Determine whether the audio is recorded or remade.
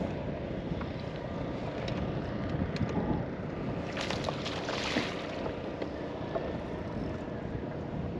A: recorded